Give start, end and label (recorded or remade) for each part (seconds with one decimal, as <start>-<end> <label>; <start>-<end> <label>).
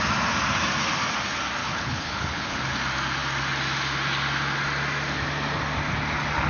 0.0-1.6 recorded; 1.6-2.7 remade; 2.7-6.5 recorded